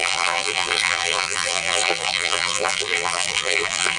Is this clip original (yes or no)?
no